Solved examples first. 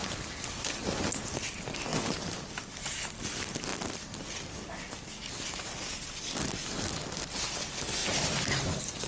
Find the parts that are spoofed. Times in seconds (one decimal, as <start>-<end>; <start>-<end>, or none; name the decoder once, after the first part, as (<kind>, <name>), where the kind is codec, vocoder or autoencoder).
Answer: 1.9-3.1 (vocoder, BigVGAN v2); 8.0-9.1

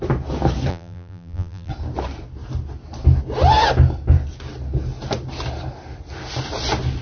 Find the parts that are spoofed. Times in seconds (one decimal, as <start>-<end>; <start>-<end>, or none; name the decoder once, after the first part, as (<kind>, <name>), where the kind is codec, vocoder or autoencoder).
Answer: 0.7-1.7 (vocoder, BigVGAN v2)

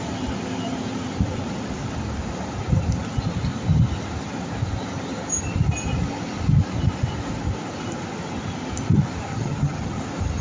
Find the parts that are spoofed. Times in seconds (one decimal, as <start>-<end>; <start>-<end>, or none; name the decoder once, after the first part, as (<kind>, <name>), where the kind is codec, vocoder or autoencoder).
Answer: 9.3-10.0 (vocoder, HiFi-GAN)

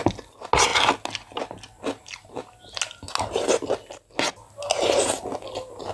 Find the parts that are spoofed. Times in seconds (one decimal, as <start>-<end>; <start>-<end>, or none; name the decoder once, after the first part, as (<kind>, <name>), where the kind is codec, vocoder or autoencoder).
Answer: none

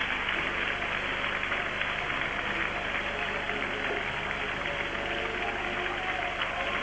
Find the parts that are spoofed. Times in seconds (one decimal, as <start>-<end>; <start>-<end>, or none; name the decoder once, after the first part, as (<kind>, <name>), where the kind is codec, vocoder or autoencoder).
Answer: none